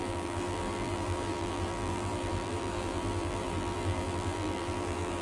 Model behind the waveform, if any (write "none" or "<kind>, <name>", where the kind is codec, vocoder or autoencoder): vocoder, BigVGAN v2